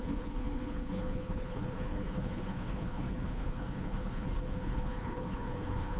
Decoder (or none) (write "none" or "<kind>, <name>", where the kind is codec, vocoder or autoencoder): codec, HILCodec